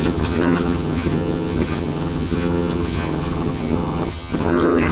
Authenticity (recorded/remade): remade